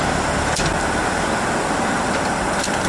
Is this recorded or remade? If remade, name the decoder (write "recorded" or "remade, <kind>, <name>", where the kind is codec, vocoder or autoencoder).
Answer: recorded